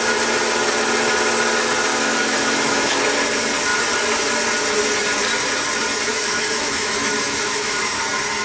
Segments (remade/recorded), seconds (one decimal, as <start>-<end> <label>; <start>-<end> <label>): 0.0-1.9 recorded; 1.9-3.0 remade; 3.0-6.1 recorded; 6.1-8.0 remade; 8.0-8.4 recorded